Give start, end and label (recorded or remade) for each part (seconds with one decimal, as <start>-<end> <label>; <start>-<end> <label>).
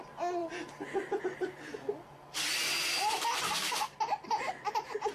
0.0-5.1 recorded